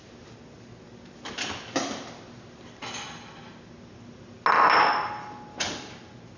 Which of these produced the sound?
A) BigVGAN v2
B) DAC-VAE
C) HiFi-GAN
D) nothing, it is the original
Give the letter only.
D